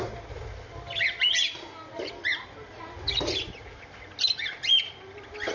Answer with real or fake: real